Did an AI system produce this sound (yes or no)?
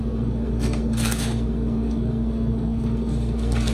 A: yes